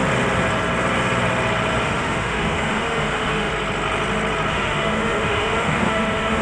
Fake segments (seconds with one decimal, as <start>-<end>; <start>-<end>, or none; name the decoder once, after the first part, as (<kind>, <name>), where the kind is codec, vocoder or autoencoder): 1.8-3.5 (autoencoder, DAC-VAE); 4.5-6.4